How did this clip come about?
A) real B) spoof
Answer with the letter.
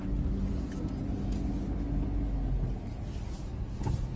A